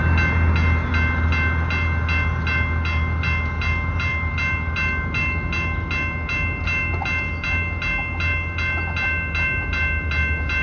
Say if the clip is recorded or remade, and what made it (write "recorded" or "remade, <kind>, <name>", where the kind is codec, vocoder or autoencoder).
recorded